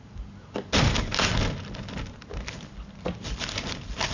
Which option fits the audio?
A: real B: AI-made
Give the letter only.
A